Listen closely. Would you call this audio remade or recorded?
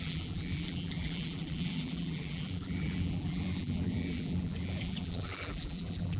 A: remade